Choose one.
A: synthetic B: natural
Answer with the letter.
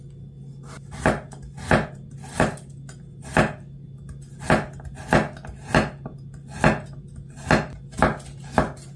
B